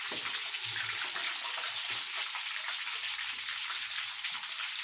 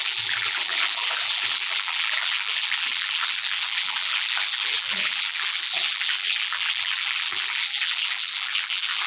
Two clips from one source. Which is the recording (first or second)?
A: first